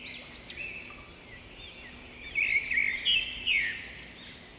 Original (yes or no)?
yes